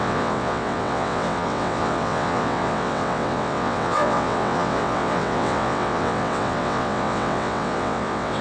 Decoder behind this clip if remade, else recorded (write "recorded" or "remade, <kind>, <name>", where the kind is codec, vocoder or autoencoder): remade, vocoder, WaveNeXt